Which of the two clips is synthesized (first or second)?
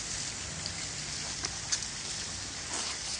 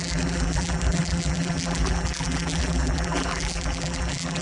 second